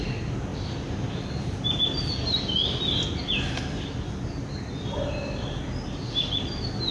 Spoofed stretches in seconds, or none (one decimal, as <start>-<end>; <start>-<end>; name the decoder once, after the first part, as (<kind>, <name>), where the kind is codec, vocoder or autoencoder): none